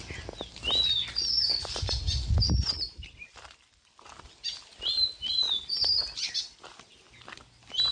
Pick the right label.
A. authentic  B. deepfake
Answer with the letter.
A